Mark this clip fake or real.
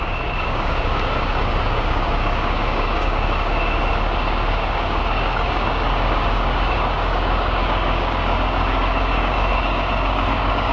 fake